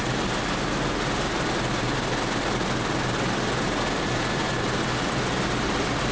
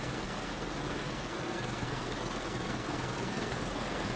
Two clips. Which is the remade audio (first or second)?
second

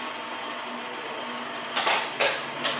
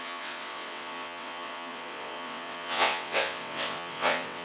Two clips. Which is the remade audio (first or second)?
second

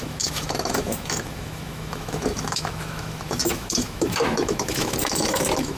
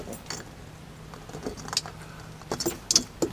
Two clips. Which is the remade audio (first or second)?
first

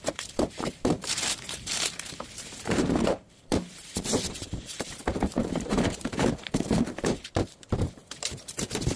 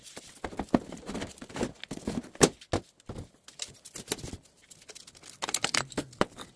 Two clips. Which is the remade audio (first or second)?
first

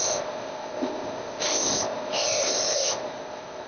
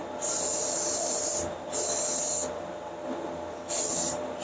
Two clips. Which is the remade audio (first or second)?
first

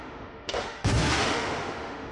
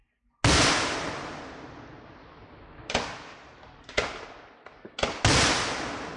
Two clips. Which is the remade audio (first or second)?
first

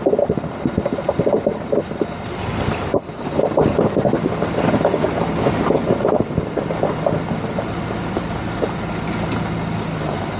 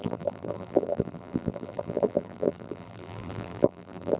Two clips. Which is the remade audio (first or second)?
second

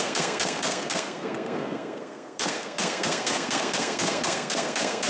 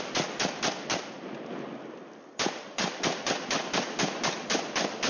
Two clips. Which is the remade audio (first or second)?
first